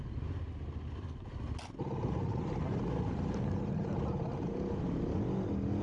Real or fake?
real